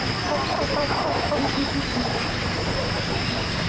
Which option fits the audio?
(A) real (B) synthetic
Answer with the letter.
A